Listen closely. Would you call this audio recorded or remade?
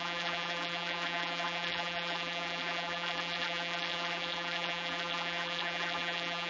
remade